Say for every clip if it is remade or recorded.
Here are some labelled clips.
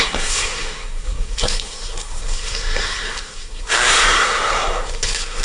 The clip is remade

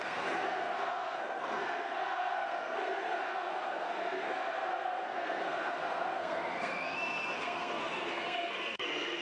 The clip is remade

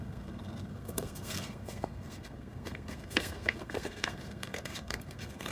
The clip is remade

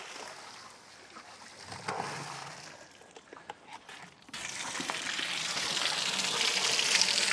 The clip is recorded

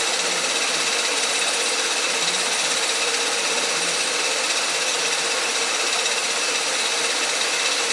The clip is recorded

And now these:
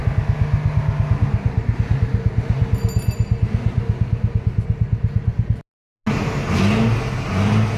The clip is recorded